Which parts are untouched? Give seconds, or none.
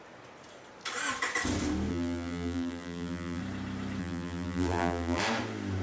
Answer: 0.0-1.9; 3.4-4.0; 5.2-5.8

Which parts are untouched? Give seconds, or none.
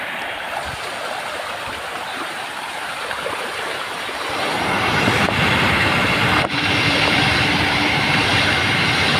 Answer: 8.3-9.2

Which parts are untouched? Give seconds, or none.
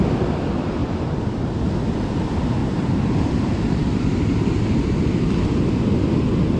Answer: 0.0-0.8; 1.5-2.6; 4.5-6.6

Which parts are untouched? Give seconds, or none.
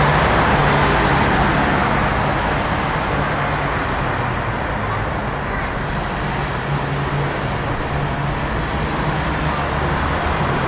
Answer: 0.0-10.7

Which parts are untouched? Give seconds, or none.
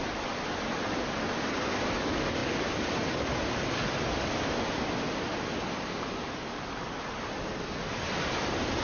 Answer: 0.0-8.8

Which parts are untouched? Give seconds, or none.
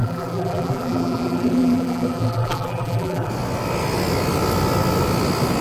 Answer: 3.3-5.6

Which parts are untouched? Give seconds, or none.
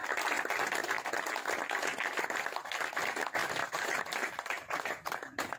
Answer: 0.0-3.6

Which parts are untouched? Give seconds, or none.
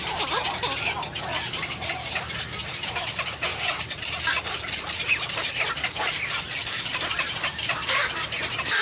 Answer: 0.0-3.5; 8.4-8.8